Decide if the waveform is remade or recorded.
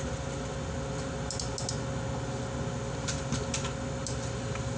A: recorded